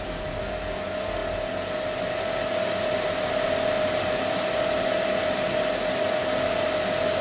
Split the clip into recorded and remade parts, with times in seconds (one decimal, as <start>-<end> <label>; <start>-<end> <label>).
0.0-7.2 recorded